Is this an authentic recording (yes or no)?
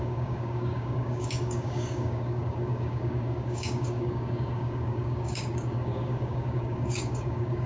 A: no